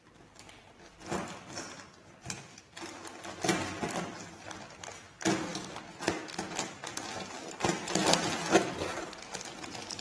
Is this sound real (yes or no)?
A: yes